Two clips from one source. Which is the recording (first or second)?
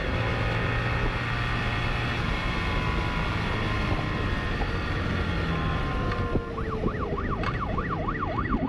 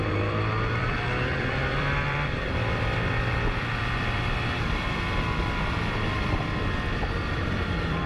first